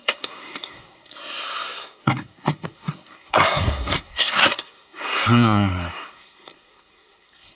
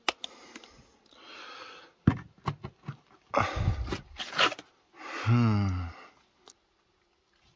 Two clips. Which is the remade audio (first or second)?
first